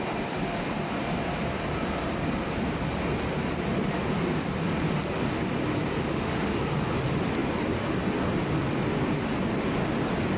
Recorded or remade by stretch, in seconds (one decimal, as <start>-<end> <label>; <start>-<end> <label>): 0.0-6.1 recorded; 6.1-6.6 remade; 6.6-10.4 recorded